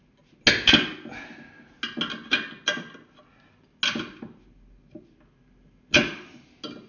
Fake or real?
real